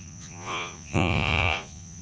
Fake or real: fake